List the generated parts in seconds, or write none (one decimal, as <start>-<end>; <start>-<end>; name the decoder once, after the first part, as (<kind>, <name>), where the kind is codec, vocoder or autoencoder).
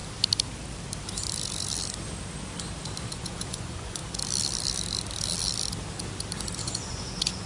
3.0-4.0 (vocoder, Vocos); 6.6-7.5